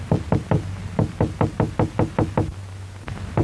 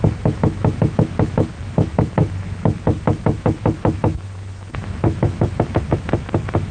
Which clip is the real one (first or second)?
first